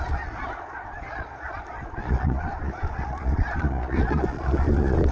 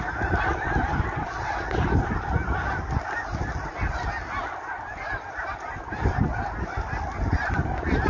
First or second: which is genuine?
second